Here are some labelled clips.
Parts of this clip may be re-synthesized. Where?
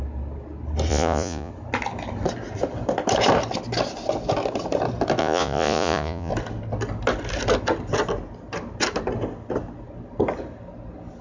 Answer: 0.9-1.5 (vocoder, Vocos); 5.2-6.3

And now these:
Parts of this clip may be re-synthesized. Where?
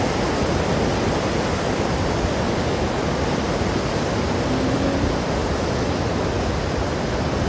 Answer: none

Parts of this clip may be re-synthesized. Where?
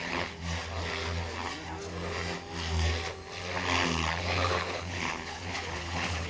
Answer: 0.0-0.4 (codec, HILCodec); 4.2-6.3